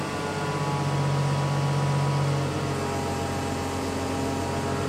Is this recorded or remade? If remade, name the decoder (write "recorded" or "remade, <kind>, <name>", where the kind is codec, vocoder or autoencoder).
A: recorded